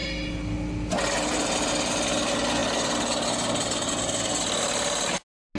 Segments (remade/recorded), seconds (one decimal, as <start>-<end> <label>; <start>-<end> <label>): 0.0-5.6 recorded